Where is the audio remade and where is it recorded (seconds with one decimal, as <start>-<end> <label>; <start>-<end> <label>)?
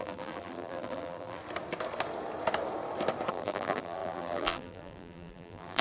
0.0-1.4 remade; 1.4-3.3 recorded; 3.3-5.8 remade